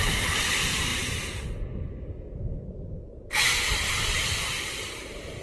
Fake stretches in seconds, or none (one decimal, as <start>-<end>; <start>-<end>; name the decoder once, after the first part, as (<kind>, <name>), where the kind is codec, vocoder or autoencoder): none